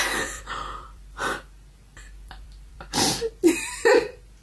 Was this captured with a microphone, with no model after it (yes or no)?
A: no